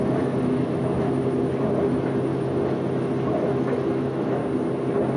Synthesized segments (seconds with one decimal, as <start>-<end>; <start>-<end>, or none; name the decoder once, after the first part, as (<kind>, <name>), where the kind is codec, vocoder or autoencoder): 0.0-4.4 (autoencoder, DAC-VAE)